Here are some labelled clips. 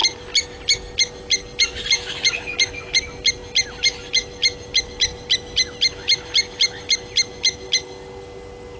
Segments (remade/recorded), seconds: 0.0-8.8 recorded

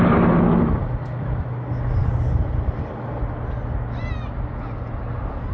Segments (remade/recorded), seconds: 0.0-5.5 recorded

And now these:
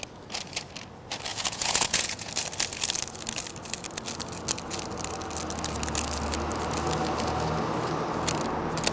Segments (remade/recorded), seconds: 0.0-1.3 recorded; 1.3-2.3 remade; 2.3-8.9 recorded